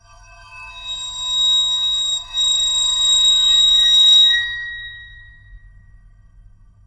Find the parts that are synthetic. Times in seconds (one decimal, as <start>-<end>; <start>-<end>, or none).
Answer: 0.0-0.7; 3.6-6.9